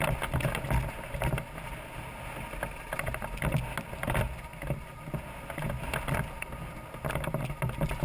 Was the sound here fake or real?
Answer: real